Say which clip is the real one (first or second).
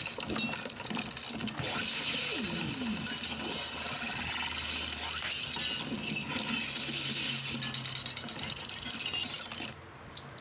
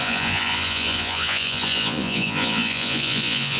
first